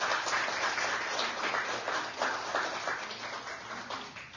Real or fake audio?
real